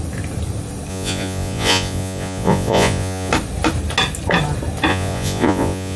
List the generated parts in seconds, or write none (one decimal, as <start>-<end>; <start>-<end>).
0.9-3.3; 4.9-6.0